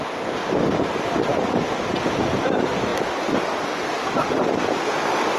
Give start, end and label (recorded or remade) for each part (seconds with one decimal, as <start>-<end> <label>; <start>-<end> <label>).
0.0-5.4 recorded